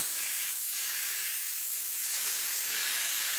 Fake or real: fake